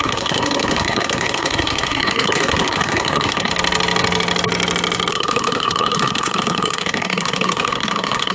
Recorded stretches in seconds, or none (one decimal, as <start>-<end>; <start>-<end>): 3.5-5.1